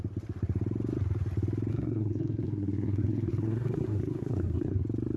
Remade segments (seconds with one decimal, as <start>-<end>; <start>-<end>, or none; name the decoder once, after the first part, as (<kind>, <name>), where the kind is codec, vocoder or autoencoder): 1.7-4.8 (codec, SNAC)